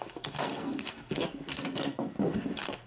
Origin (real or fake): fake